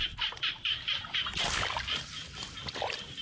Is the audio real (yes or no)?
no